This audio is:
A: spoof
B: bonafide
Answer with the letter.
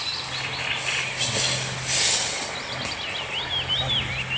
B